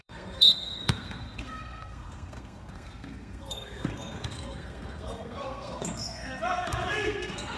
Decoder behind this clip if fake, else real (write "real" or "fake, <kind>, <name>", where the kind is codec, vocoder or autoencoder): fake, codec, SNAC